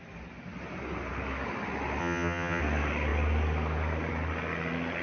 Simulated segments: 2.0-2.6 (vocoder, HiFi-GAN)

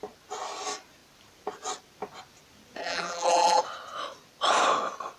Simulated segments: 2.8-3.6 (vocoder, BigVGAN v2)

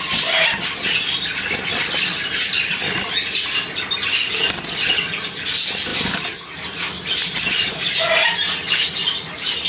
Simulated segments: none

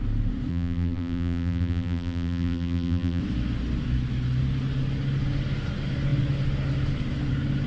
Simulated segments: 0.5-3.2 (vocoder, BigVGAN v2)

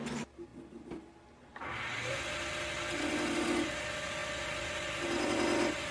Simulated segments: none